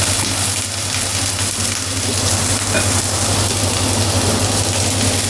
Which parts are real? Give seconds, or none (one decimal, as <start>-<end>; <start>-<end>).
0.0-5.3